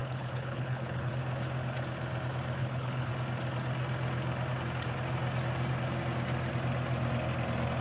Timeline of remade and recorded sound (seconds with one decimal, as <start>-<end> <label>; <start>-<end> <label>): 0.0-1.1 remade; 1.1-2.6 recorded; 2.6-3.1 remade; 3.1-7.8 recorded